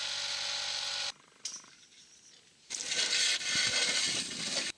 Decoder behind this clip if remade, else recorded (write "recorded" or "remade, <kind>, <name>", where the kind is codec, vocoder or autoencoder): recorded